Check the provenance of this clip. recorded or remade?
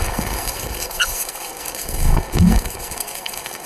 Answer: remade